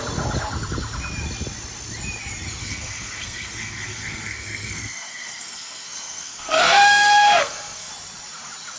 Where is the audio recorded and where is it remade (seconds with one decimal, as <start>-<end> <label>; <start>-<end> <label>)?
0.0-2.6 recorded; 2.6-7.9 remade; 7.9-8.8 recorded